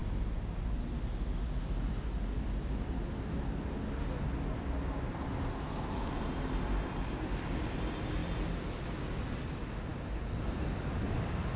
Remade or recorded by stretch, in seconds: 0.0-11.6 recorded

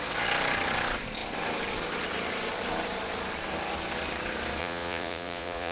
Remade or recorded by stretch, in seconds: 0.0-4.6 recorded; 4.6-5.7 remade

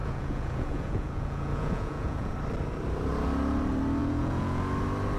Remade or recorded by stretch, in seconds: 0.0-2.3 remade; 2.3-4.0 recorded; 4.0-4.6 remade; 4.6-5.2 recorded

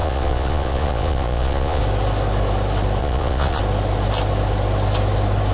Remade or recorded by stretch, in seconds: 0.0-1.8 remade; 1.8-3.0 recorded; 3.0-3.6 remade; 3.6-5.5 recorded

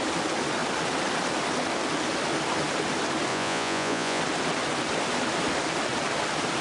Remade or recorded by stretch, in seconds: 0.0-3.3 recorded; 3.3-4.2 remade; 4.2-6.6 recorded

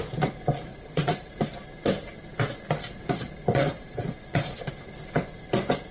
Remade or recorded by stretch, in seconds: 0.0-0.7 recorded; 0.7-1.3 remade; 1.3-2.9 recorded; 2.9-4.6 remade; 4.6-5.9 recorded

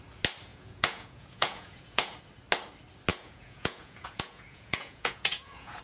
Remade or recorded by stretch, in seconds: 0.0-0.5 recorded; 0.5-2.2 remade; 2.2-3.1 recorded; 3.1-5.8 remade